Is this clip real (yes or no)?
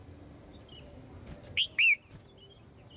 yes